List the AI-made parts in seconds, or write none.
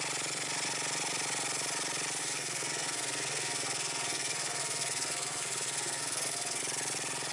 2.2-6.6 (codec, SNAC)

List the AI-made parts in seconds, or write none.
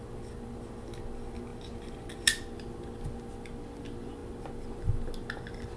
none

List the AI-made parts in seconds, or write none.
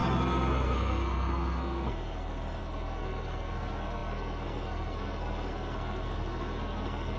0.0-7.2 (codec, SNAC)